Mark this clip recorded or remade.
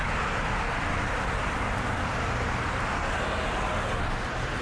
recorded